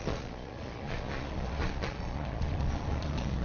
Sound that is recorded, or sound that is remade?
remade